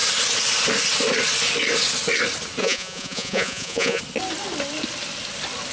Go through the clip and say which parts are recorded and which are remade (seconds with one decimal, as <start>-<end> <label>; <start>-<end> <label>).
0.0-2.6 recorded; 2.6-4.0 remade; 4.0-5.7 recorded